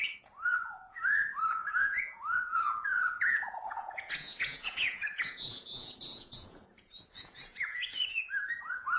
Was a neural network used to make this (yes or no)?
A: yes